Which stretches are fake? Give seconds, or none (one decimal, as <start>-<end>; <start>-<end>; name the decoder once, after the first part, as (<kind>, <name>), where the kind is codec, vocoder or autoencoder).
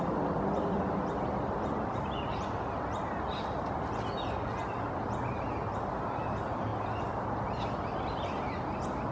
none